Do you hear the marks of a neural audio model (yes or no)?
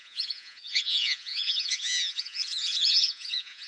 yes